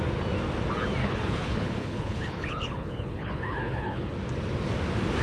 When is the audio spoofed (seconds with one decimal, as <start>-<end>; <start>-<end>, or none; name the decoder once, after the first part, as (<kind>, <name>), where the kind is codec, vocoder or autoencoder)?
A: 1.0-4.1 (codec, HILCodec)